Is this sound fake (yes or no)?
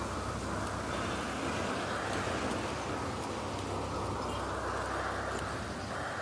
no